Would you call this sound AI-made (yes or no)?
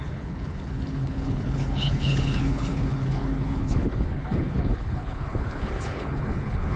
yes